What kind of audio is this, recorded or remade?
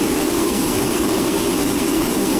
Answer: remade